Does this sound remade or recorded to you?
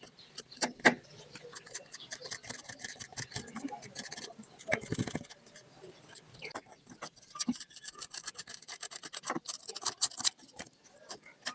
recorded